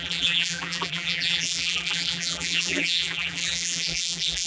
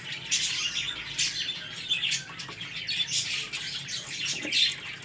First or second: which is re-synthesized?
first